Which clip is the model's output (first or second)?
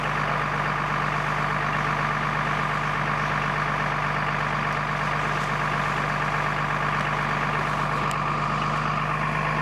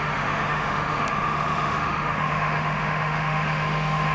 second